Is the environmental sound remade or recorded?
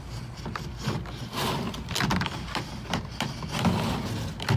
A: recorded